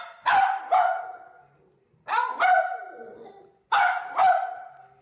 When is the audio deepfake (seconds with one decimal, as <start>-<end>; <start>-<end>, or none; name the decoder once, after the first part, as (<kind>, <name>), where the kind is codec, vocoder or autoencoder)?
none